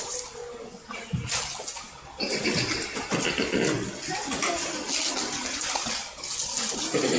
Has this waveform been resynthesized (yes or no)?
no